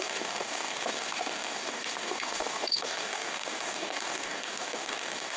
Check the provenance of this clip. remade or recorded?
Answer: remade